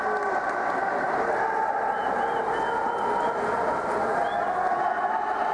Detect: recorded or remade recorded